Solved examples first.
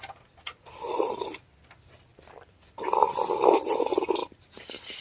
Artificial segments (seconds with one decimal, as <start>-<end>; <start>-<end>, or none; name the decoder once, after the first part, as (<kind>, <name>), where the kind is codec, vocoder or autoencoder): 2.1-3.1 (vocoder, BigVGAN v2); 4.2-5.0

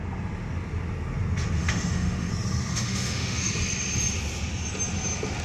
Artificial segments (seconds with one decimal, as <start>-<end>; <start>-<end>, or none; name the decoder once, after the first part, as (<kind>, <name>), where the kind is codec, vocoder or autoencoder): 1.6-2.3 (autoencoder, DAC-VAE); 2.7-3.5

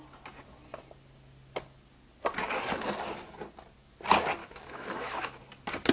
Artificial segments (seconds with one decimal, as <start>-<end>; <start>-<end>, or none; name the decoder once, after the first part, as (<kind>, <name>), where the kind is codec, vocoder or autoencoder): 4.4-5.4 (autoencoder, DAC-VAE)

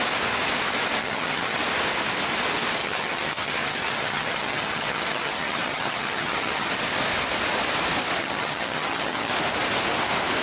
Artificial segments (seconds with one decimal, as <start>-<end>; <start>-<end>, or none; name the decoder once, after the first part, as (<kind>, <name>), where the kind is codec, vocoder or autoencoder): 1.0-1.6 (vocoder, HiFi-GAN); 2.8-6.7; 8.2-9.3

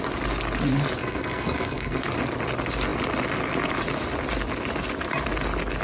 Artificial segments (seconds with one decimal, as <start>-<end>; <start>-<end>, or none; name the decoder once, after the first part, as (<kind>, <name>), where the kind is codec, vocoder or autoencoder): 1.0-2.0 (codec, SNAC)

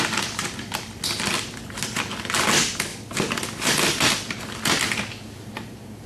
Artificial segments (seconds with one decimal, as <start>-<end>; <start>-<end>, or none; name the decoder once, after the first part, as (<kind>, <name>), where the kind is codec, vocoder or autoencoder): none